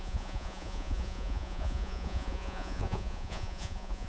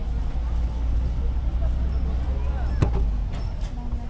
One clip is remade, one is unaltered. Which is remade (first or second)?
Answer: first